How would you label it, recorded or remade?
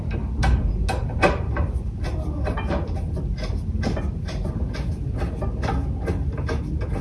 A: recorded